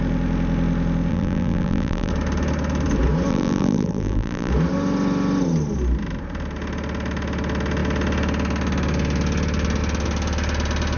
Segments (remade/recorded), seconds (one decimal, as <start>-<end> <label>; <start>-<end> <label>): 0.0-1.1 recorded; 1.1-2.1 remade; 2.1-3.3 recorded; 3.3-4.5 remade; 4.5-11.0 recorded